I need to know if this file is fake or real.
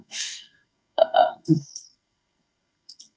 fake